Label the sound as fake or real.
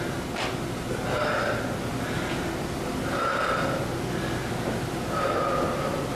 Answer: real